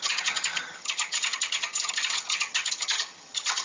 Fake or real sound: fake